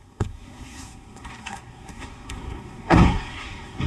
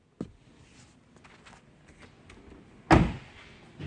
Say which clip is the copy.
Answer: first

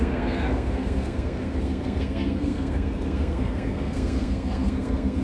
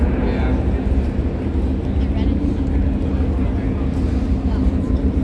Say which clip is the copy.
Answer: first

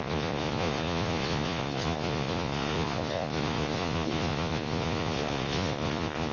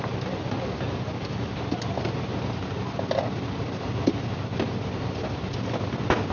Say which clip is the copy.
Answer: first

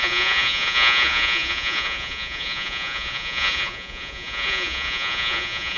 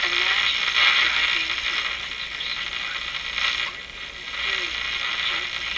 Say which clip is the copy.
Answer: first